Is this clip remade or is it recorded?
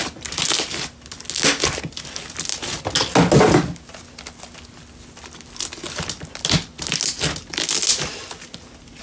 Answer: recorded